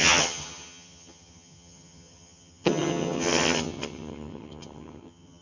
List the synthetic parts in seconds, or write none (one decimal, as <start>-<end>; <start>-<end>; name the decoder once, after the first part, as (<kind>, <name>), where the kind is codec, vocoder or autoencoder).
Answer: 0.0-5.4 (vocoder, HiFi-GAN)